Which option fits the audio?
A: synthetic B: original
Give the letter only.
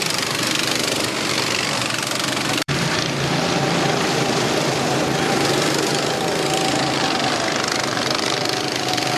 A